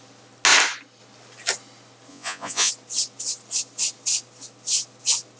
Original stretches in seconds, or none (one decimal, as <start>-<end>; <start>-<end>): 0.0-2.1; 2.7-5.4